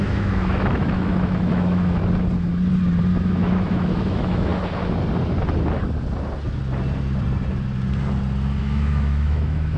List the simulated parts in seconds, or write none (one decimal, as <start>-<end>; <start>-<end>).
0.0-2.0; 3.2-4.5; 8.6-9.8